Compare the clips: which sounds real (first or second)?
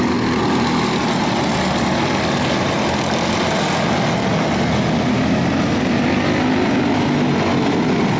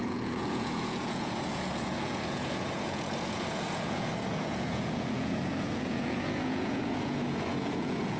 first